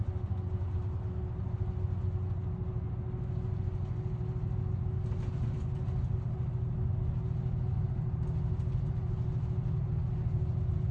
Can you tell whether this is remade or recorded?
recorded